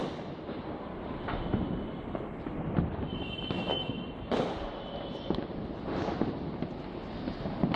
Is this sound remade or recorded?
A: recorded